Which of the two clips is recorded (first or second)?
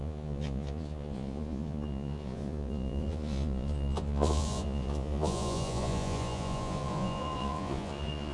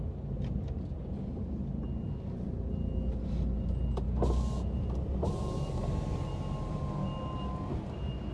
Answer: second